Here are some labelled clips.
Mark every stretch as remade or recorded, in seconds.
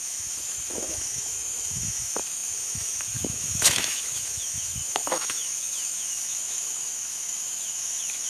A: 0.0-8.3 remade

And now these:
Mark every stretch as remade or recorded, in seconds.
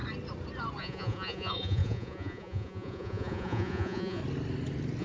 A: 0.0-0.8 recorded; 0.8-4.2 remade; 4.2-5.0 recorded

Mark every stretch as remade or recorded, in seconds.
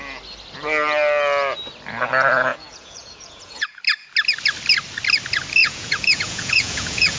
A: 0.0-2.5 recorded; 2.5-3.8 remade; 3.8-5.6 recorded; 5.6-7.2 remade